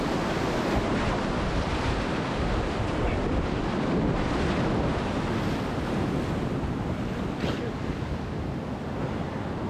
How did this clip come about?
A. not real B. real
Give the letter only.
B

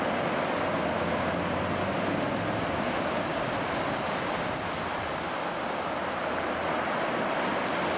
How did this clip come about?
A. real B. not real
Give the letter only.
A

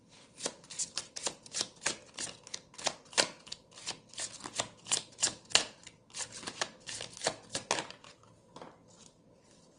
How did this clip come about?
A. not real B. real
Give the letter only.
B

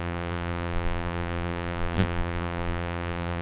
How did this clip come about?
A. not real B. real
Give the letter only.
A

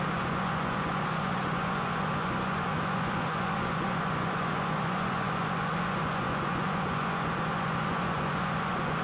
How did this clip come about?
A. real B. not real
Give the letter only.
B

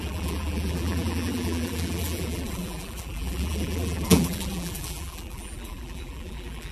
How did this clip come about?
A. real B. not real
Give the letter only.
B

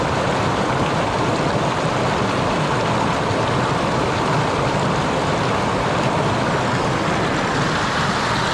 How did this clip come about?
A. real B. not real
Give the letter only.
A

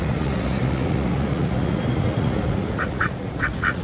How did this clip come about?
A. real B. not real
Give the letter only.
B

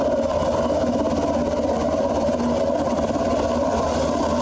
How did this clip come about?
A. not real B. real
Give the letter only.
A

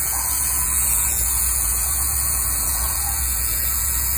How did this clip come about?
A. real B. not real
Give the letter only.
B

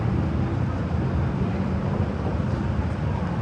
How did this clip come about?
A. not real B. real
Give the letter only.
B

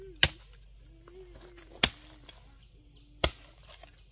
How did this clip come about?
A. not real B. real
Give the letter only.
B